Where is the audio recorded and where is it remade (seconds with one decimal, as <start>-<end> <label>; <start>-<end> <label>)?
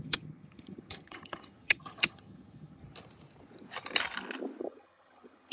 0.0-2.8 remade; 2.8-4.6 recorded; 4.6-5.5 remade